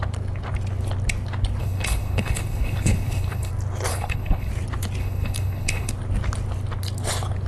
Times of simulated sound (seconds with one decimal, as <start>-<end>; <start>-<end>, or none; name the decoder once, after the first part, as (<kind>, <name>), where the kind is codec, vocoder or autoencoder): 1.6-3.5 (codec, HILCodec); 3.9-4.5; 5.0-5.9